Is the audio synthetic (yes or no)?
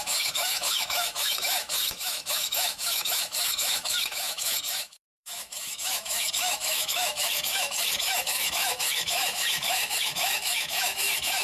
yes